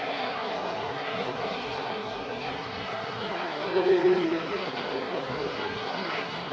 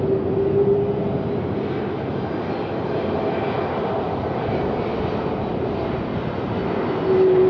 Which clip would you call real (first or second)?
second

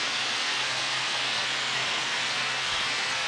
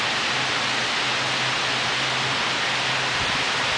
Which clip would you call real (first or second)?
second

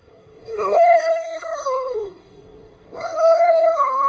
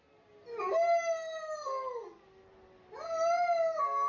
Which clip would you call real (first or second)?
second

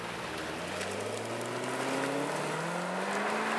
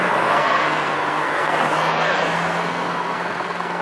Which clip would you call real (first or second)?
first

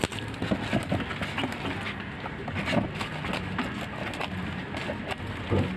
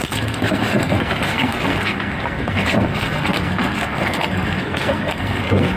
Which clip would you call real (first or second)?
first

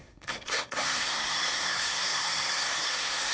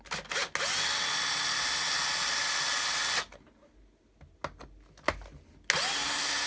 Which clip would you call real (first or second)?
second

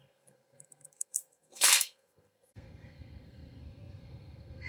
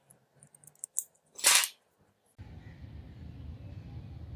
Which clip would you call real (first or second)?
second